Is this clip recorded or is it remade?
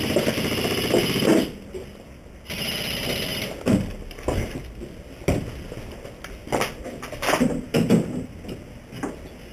recorded